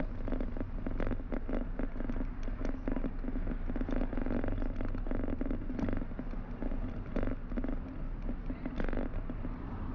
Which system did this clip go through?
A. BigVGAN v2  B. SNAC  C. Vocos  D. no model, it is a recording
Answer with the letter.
D